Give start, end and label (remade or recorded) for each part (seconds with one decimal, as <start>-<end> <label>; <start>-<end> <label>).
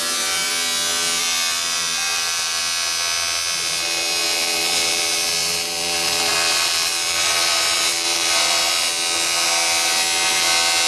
0.0-0.5 remade; 0.5-1.2 recorded; 1.2-2.6 remade; 2.6-4.2 recorded; 4.2-8.7 remade; 8.7-10.9 recorded